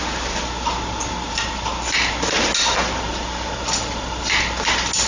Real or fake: real